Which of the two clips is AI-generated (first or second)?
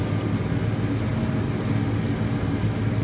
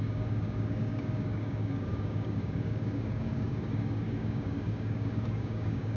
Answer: second